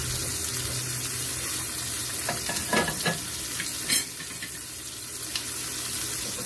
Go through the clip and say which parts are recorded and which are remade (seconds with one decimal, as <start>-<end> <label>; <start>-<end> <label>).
0.0-6.5 recorded

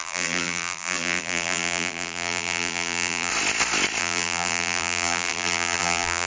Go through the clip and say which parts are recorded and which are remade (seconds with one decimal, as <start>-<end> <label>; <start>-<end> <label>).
0.0-3.3 remade; 3.3-4.0 recorded; 4.0-6.3 remade

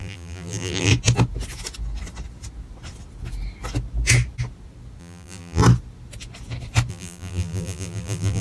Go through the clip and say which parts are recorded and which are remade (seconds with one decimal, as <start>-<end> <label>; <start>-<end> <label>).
0.0-0.9 remade; 0.9-5.0 recorded; 5.0-5.6 remade; 5.6-6.9 recorded; 6.9-8.4 remade

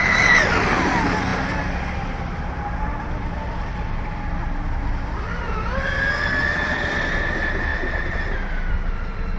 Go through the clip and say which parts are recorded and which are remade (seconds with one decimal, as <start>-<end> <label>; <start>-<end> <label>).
0.0-7.7 recorded; 7.7-8.7 remade; 8.7-9.4 recorded

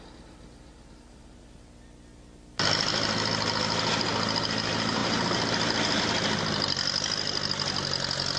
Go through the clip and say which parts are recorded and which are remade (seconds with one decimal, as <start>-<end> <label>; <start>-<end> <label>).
0.0-8.4 recorded

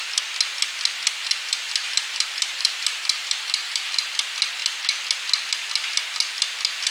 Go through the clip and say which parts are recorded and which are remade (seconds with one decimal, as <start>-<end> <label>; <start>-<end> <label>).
0.0-1.2 recorded; 1.2-4.0 remade; 4.0-6.9 recorded

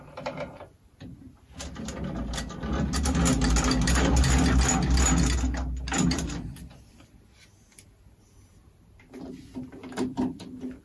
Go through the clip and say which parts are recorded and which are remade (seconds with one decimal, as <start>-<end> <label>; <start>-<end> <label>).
0.0-10.8 recorded

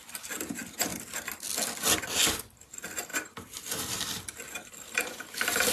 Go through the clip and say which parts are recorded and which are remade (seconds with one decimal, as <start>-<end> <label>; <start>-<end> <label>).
0.0-0.9 remade; 0.9-2.0 recorded; 2.0-5.7 remade